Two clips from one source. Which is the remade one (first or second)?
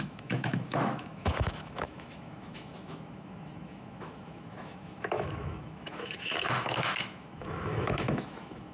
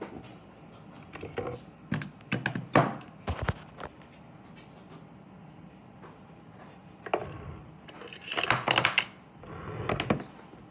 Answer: first